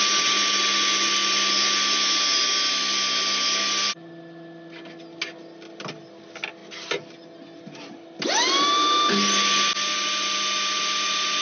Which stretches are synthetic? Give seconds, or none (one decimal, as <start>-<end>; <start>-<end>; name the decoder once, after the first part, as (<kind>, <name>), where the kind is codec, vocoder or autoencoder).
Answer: none